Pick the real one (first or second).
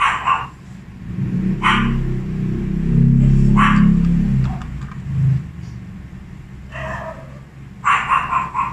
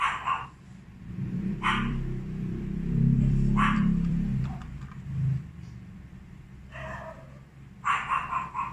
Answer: first